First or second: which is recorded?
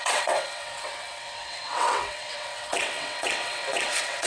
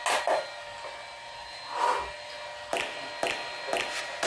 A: second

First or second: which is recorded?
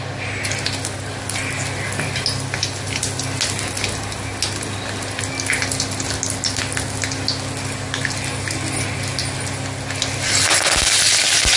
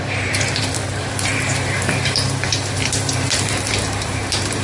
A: first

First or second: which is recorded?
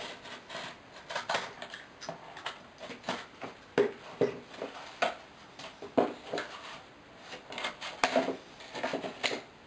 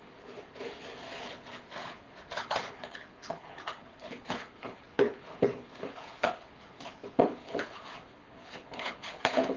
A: first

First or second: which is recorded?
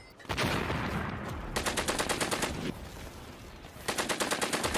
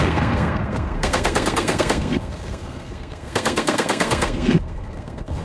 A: first